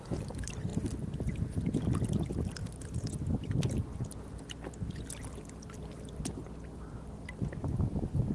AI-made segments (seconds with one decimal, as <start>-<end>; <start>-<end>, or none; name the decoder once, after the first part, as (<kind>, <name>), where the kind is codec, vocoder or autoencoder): none